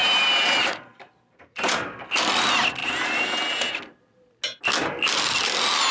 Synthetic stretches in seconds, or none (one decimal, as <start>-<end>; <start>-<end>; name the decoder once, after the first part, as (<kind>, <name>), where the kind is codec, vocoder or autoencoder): 0.0-2.1 (vocoder, BigVGAN v2)